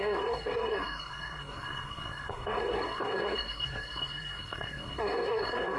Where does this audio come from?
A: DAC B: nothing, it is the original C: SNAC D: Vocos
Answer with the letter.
C